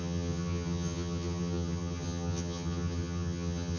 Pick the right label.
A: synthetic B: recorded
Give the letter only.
A